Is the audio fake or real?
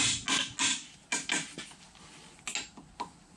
real